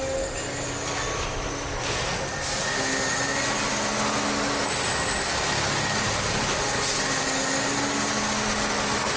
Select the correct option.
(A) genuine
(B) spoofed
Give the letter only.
A